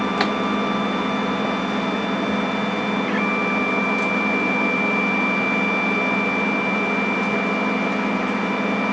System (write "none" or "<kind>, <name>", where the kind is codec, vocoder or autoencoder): none